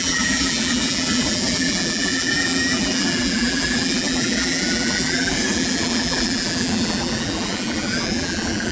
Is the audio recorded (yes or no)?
no